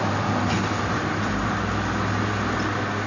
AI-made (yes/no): no